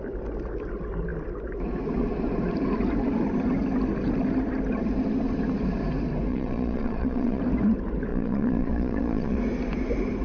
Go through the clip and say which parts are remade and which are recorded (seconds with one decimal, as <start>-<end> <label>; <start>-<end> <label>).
0.0-6.3 recorded; 6.3-7.4 remade; 7.4-8.1 recorded; 8.1-9.4 remade; 9.4-10.2 recorded

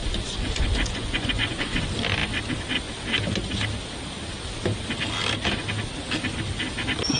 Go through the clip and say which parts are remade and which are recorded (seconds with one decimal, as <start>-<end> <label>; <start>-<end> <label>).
0.0-1.8 remade; 1.8-7.2 recorded

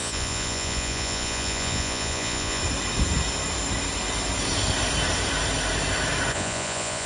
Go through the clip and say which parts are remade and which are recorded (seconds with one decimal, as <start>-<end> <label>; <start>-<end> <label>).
0.0-2.6 remade; 2.6-6.3 recorded; 6.3-7.1 remade

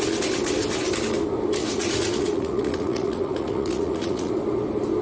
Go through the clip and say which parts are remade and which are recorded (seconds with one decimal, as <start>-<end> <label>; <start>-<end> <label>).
0.0-1.6 recorded; 1.6-4.3 remade; 4.3-5.0 recorded

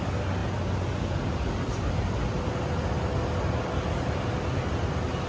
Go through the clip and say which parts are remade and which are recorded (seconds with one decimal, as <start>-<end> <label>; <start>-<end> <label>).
0.0-5.3 recorded

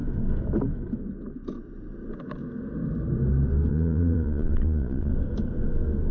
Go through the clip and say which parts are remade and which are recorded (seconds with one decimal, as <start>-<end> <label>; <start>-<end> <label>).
0.0-3.7 recorded; 3.7-5.1 remade; 5.1-6.1 recorded

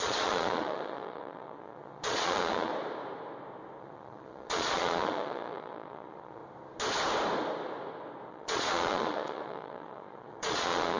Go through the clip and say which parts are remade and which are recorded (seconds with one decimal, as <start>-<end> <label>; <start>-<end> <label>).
0.0-2.7 remade; 2.7-3.8 recorded; 3.8-6.4 remade; 6.4-8.3 recorded; 8.3-11.0 remade

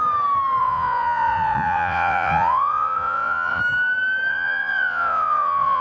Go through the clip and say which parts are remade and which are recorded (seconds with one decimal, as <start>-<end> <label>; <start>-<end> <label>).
0.0-0.6 recorded; 0.6-3.6 remade; 3.6-4.3 recorded; 4.3-5.8 remade